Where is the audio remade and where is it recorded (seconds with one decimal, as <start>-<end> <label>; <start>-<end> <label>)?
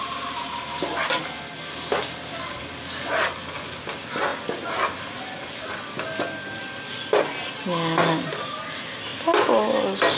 0.0-10.2 recorded